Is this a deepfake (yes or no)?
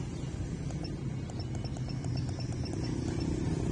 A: no